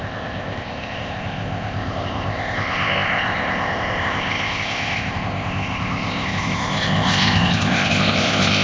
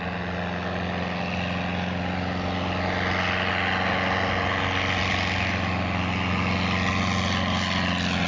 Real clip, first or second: second